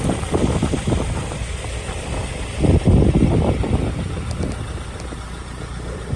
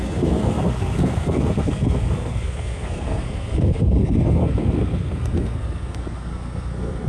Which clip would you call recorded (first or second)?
first